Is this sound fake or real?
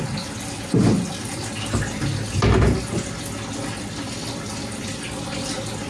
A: real